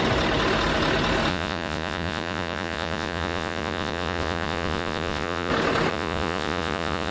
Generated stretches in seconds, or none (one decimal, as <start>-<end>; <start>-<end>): 1.3-5.5; 5.9-7.1